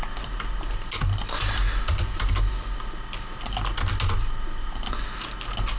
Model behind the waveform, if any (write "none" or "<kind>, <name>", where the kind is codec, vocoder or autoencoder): none